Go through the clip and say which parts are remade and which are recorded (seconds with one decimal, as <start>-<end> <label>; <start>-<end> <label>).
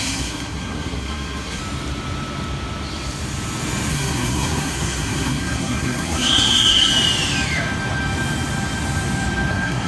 0.0-1.6 remade; 1.6-3.9 recorded; 3.9-6.9 remade; 6.9-9.5 recorded; 9.5-9.9 remade